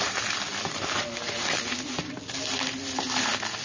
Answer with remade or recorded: recorded